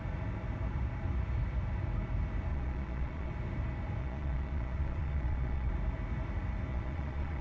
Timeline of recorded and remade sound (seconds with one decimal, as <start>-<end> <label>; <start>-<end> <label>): 0.0-2.5 recorded; 2.5-3.3 remade; 3.3-4.0 recorded; 4.0-5.7 remade; 5.7-6.7 recorded; 6.7-7.4 remade